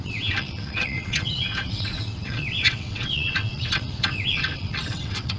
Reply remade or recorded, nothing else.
remade